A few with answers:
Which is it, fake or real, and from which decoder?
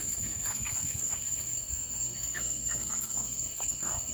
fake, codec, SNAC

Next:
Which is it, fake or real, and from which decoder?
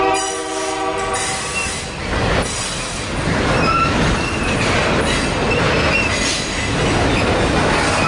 real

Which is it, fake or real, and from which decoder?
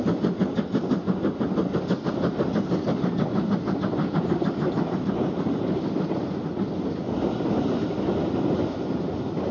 real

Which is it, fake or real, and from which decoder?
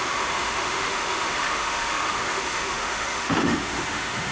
fake, autoencoder, DAC-VAE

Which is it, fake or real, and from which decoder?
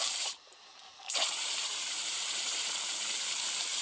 fake, vocoder, BigVGAN v2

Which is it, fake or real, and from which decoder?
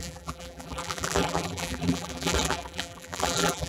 fake, vocoder, BigVGAN v2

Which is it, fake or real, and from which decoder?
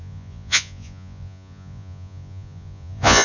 fake, vocoder, Vocos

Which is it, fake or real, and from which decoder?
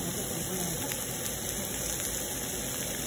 real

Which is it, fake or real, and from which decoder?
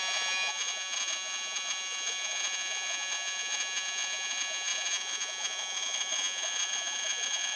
fake, vocoder, Vocos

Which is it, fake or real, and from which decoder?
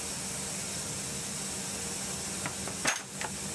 real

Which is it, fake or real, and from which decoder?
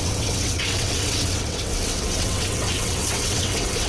fake, vocoder, WaveNeXt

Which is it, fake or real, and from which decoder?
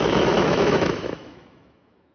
fake, autoencoder, DAC-VAE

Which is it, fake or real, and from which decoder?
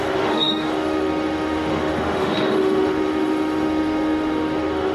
fake, autoencoder, DAC-VAE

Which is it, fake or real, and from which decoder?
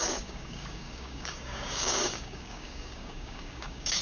fake, codec, DAC